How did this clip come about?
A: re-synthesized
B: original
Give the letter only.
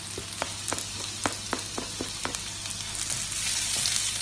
B